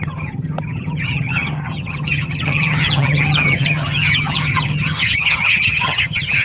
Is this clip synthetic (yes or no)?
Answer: yes